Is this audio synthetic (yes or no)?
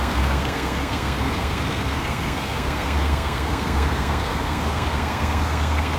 yes